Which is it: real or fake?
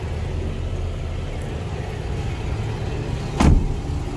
real